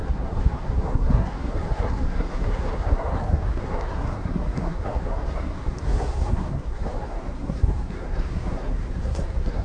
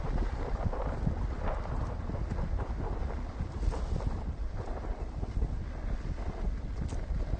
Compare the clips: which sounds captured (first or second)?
second